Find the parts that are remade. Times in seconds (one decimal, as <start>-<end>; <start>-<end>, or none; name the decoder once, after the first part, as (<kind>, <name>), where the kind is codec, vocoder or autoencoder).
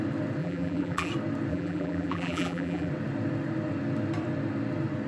0.4-1.1 (vocoder, BigVGAN v2); 1.5-2.9